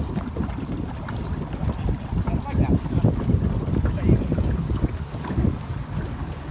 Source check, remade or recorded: recorded